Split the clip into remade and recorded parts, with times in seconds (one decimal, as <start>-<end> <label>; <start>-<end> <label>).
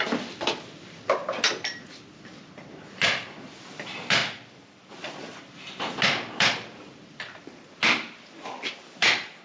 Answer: 0.0-1.2 remade; 1.2-2.8 recorded; 2.8-9.4 remade